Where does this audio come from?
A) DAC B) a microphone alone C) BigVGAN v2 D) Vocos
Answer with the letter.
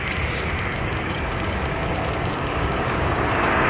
A